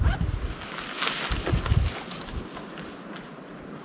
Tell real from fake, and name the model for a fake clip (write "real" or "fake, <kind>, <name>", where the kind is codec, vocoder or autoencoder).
real